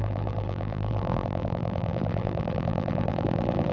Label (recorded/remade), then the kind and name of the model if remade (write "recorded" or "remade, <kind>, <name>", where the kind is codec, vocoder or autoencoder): remade, vocoder, BigVGAN v2